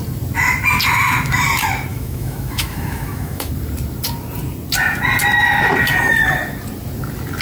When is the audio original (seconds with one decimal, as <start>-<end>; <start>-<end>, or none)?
0.0-1.9; 3.5-7.4